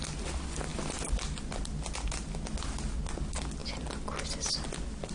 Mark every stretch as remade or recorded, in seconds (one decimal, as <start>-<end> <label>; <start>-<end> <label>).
0.0-5.1 recorded